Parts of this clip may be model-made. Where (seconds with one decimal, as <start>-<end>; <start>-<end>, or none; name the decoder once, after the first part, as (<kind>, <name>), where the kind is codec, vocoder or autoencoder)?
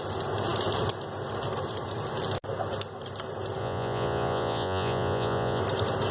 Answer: 3.6-5.6 (vocoder, Vocos)